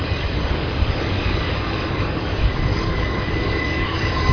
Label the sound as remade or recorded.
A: remade